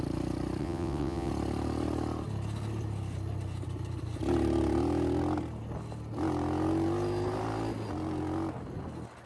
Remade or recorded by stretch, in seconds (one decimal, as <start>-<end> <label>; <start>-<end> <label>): 0.0-0.6 recorded; 0.6-1.3 remade; 1.3-9.3 recorded